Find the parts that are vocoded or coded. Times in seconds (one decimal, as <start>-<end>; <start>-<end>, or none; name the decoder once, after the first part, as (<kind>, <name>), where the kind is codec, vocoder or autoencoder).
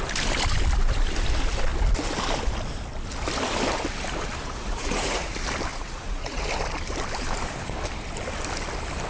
4.4-5.3 (vocoder, Vocos); 5.7-6.4